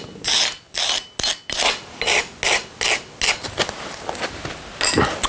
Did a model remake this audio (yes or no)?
no